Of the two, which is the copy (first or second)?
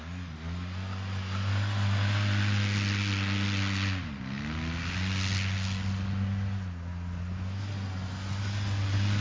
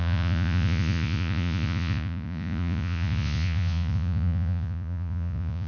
second